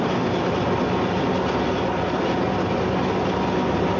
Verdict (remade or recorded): recorded